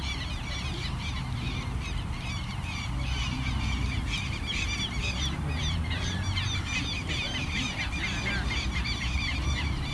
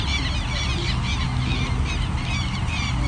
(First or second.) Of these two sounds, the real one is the second